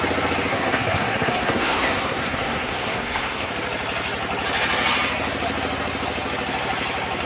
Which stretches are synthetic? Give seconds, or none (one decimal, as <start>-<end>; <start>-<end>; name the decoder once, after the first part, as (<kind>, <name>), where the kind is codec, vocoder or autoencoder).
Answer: 0.5-3.5 (codec, SNAC)